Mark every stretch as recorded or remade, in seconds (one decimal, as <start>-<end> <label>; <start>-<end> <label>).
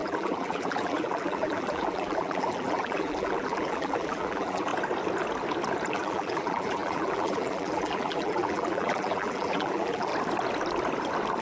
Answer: 0.0-4.7 remade; 4.7-5.9 recorded; 5.9-10.1 remade; 10.1-11.4 recorded